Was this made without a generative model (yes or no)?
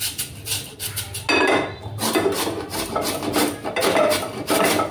yes